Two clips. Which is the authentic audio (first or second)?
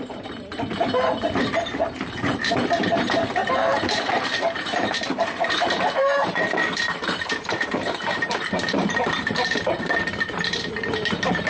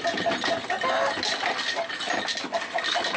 second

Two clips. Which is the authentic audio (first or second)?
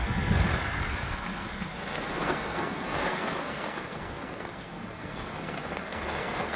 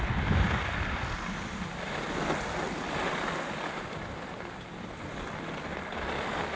second